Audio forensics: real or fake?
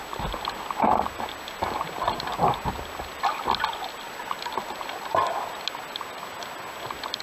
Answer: real